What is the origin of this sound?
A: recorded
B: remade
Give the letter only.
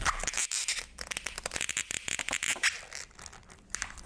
A